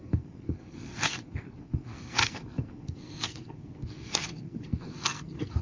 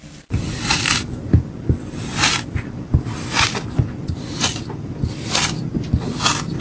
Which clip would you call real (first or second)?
second